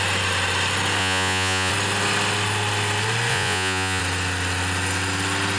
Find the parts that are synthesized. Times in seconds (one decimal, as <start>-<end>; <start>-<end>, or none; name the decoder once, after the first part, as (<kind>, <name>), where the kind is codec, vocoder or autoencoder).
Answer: 1.0-1.7 (vocoder, Vocos); 3.3-4.0